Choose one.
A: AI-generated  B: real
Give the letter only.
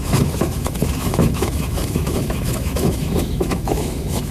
A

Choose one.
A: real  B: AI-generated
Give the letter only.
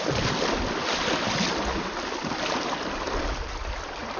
A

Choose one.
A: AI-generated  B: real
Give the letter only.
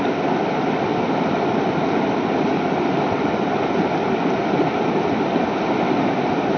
B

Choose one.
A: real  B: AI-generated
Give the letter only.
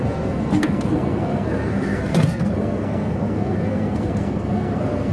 B